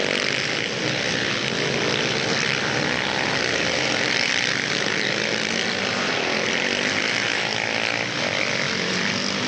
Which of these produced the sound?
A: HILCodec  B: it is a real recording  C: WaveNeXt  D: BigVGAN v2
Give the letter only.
D